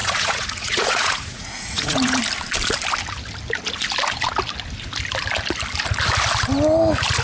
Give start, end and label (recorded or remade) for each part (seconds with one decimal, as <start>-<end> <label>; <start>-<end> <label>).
0.0-2.2 remade; 2.2-7.2 recorded